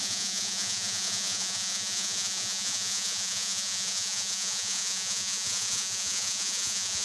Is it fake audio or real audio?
fake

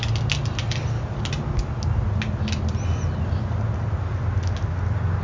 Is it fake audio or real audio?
real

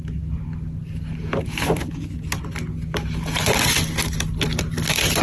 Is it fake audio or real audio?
real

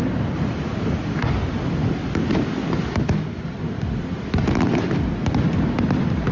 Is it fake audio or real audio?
real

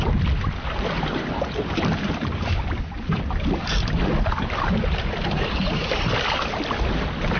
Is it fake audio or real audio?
real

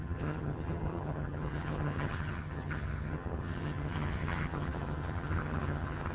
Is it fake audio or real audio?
fake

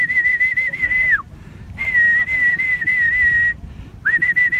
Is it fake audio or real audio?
fake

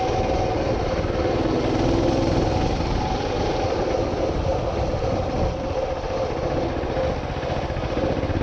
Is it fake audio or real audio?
real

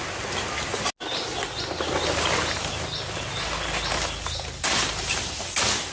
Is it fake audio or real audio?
real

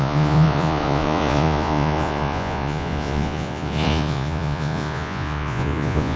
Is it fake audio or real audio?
fake